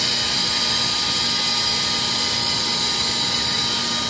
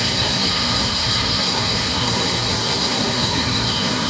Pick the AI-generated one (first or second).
second